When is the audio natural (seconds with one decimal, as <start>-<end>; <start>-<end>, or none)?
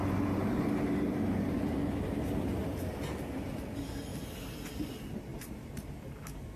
0.0-5.3; 5.9-6.6